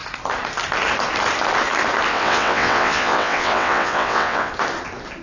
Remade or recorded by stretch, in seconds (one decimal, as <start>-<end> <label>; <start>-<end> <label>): 0.0-2.1 recorded; 2.1-4.5 remade; 4.5-5.2 recorded

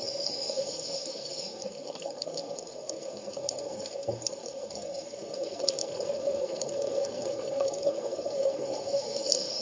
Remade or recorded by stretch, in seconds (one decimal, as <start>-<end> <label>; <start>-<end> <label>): 0.0-9.6 remade